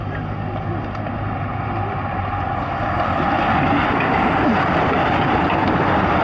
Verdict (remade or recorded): recorded